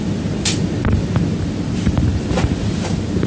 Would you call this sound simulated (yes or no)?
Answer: yes